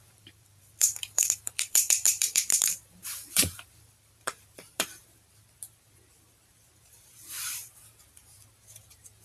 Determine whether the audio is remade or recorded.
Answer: remade